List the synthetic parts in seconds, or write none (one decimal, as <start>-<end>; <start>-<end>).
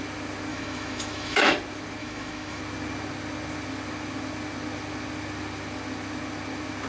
0.5-1.5; 2.0-2.6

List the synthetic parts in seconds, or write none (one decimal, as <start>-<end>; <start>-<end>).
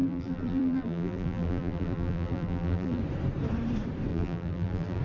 0.0-3.0; 4.1-5.0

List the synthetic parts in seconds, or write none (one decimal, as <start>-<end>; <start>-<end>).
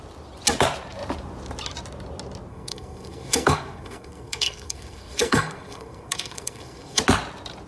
2.5-7.0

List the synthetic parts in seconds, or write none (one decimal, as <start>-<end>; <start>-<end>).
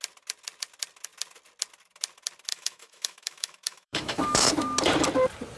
2.5-4.5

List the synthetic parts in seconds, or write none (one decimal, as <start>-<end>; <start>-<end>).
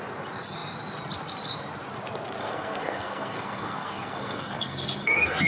2.4-5.5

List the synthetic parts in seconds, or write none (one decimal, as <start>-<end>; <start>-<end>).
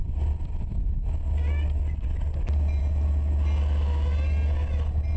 none